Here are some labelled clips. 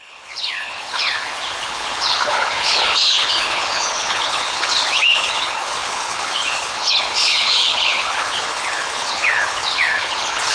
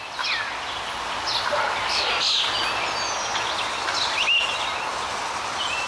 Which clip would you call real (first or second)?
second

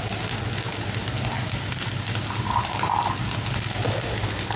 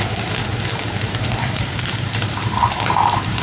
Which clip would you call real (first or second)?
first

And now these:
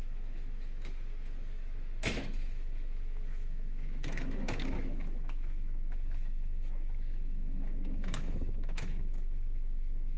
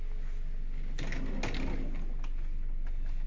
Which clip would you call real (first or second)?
second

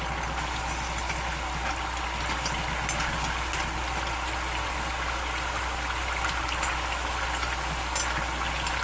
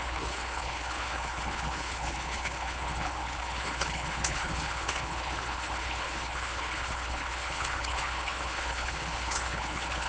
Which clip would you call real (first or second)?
first